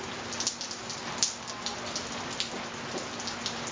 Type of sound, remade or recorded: recorded